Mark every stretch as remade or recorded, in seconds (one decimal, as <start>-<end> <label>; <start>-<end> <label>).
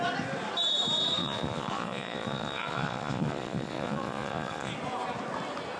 0.0-1.2 recorded; 1.2-4.7 remade; 4.7-5.8 recorded